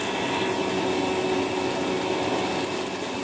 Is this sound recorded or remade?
recorded